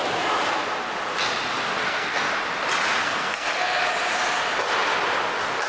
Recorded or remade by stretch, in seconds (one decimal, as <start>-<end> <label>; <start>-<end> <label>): 0.0-1.8 recorded; 1.8-2.3 remade; 2.3-3.0 recorded; 3.0-3.8 remade; 3.8-5.7 recorded